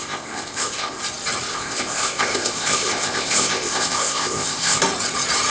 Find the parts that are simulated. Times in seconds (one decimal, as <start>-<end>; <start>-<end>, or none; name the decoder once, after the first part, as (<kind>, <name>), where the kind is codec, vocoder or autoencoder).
0.0-1.0 (codec, ZipCodec); 1.5-4.8